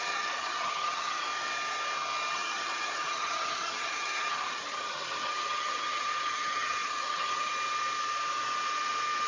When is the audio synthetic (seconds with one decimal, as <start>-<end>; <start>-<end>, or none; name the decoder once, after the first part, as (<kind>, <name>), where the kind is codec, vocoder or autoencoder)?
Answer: 0.0-1.3 (vocoder, HiFi-GAN); 2.3-7.5